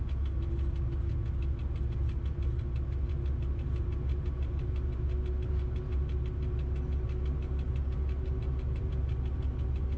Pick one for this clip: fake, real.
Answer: real